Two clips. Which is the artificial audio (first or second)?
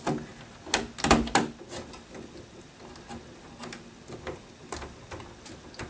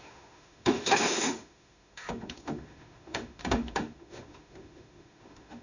second